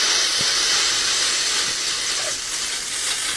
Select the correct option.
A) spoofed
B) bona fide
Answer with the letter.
B